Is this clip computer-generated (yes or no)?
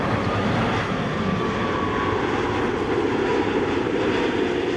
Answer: no